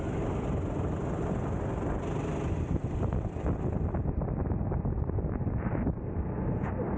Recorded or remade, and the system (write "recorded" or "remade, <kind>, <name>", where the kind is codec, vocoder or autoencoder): recorded